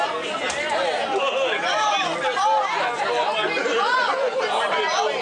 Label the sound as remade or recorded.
recorded